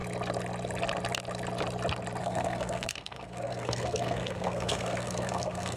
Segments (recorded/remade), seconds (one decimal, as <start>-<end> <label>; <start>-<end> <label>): 0.0-2.2 recorded; 2.2-5.8 remade